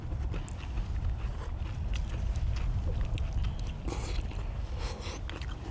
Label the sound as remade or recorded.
recorded